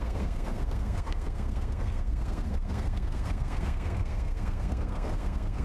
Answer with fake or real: fake